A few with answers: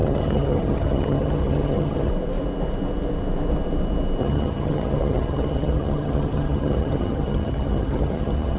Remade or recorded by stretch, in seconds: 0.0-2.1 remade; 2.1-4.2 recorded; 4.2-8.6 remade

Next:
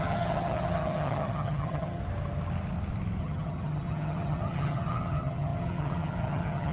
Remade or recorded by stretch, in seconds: 0.0-2.0 remade; 2.0-3.2 recorded; 3.2-6.7 remade

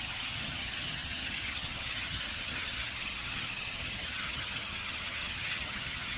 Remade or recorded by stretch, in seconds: 0.0-6.2 remade

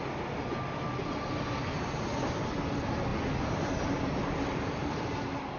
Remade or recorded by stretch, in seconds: 0.0-5.6 recorded

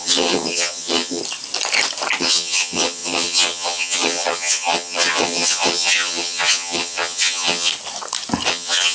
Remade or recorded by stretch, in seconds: 0.0-1.2 remade; 1.2-2.2 recorded; 2.2-7.7 remade; 7.7-8.5 recorded; 8.5-8.9 remade

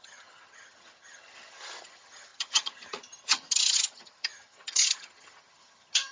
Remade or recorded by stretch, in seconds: 0.0-6.1 remade

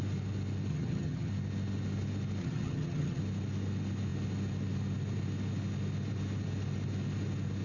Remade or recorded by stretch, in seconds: 0.0-0.7 recorded; 0.7-1.3 remade; 1.3-2.4 recorded; 2.4-3.2 remade; 3.2-7.6 recorded

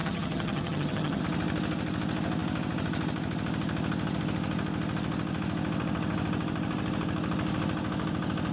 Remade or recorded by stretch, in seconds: 0.0-1.2 remade; 1.2-8.5 recorded